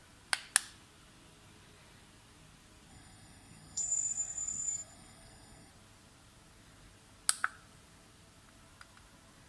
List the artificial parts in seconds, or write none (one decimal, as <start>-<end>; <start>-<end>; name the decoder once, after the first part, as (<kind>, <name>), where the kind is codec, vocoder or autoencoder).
2.9-5.7 (codec, SNAC)

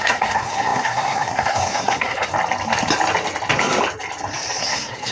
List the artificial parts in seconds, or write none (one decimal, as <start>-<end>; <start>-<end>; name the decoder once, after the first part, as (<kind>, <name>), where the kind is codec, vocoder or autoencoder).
0.0-2.3 (codec, SNAC); 4.6-5.1

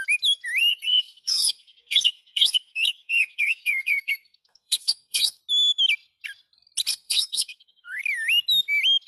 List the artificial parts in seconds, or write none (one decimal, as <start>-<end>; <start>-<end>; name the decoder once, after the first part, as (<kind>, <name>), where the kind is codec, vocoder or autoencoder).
0.7-5.4 (codec, SNAC); 6.9-8.0

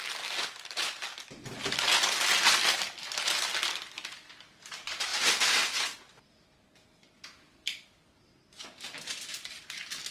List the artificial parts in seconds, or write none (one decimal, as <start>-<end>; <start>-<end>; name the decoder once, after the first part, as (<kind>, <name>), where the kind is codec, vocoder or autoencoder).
none

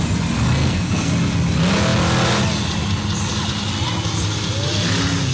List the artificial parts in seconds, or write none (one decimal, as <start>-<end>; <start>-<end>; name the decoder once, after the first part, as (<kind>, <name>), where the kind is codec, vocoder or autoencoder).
0.5-1.1 (codec, SNAC)

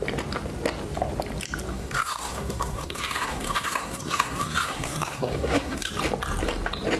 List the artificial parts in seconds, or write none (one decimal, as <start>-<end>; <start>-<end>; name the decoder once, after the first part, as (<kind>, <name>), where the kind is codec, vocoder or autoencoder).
1.7-5.9 (codec, SNAC)

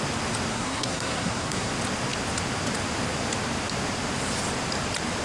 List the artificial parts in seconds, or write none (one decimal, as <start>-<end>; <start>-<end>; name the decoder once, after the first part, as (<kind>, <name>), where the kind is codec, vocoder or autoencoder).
0.5-1.7 (codec, SNAC)